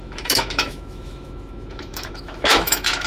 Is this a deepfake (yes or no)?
yes